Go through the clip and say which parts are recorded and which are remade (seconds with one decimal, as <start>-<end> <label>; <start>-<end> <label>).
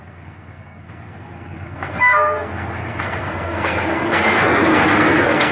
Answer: 0.0-5.5 remade